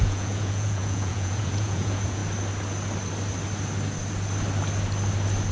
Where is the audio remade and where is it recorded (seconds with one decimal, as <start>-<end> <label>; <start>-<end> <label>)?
0.0-2.2 remade; 2.2-5.5 recorded